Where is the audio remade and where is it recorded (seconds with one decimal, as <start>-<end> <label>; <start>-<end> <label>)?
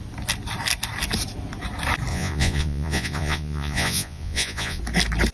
0.0-2.1 recorded; 2.1-4.8 remade; 4.8-5.3 recorded